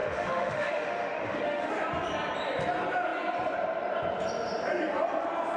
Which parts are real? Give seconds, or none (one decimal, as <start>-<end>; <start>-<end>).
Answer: 1.7-5.6